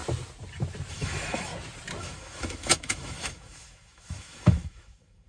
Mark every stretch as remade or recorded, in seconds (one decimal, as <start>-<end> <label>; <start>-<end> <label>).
0.0-0.9 recorded; 0.9-1.5 remade; 1.5-2.0 recorded; 2.0-5.3 remade